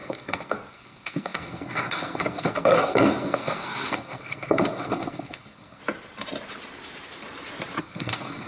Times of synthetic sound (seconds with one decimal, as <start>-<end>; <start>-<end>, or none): 0.0-5.8; 7.8-8.5